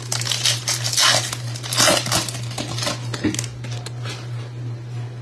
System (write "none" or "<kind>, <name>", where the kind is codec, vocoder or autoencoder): none